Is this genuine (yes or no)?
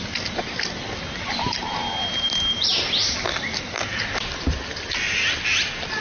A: yes